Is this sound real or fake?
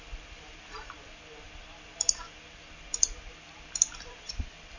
real